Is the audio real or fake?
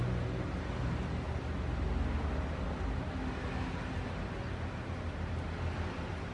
real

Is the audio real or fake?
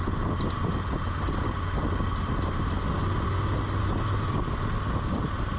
real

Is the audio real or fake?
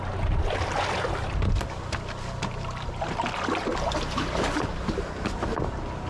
real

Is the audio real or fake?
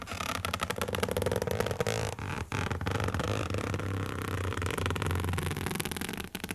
real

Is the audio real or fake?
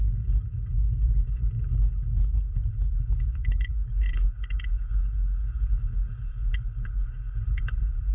fake